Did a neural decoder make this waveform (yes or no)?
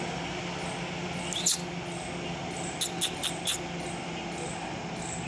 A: no